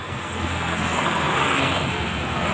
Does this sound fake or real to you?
fake